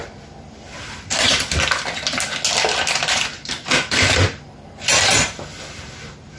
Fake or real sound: real